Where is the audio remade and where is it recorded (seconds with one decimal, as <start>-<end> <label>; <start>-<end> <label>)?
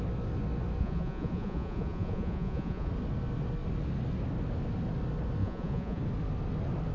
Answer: 0.0-0.8 recorded; 0.8-2.9 remade; 2.9-5.4 recorded; 5.4-6.0 remade; 6.0-6.9 recorded